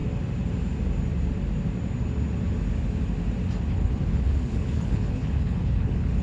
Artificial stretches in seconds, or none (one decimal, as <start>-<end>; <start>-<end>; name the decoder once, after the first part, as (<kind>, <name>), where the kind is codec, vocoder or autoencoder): 3.7-6.2 (codec, HILCodec)